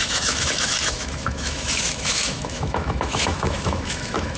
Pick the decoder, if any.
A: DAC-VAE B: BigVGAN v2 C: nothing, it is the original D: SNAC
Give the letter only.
A